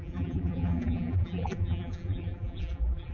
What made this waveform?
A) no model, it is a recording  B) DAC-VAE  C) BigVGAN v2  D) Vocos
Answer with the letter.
C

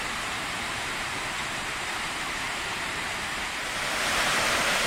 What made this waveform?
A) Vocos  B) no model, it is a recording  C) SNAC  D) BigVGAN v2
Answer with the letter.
D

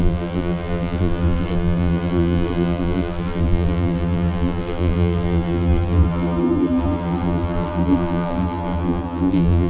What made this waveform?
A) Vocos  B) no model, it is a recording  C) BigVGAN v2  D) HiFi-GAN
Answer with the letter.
C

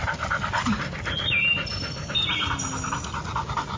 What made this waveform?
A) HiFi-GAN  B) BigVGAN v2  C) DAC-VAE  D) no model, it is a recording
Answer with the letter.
D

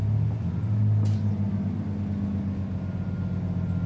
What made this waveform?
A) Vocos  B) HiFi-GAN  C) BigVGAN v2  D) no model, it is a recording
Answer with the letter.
D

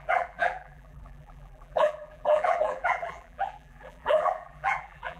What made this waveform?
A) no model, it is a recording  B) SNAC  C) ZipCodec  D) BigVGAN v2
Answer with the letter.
D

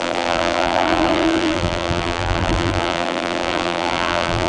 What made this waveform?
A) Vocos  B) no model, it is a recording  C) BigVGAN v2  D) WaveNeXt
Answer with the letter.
C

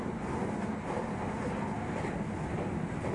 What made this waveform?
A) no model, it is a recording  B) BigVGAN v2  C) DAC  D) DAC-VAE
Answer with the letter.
A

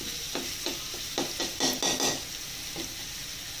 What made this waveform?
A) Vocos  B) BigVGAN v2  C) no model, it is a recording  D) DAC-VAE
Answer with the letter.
C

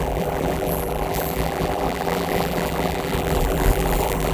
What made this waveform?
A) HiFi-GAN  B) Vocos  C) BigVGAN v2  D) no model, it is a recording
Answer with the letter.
C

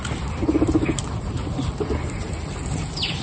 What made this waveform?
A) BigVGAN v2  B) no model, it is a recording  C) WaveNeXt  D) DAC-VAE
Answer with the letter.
B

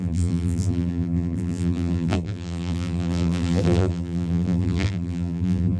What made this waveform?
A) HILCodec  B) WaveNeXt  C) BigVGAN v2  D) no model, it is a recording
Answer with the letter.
C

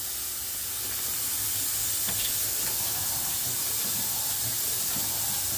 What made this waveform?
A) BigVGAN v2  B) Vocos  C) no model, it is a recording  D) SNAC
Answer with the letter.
C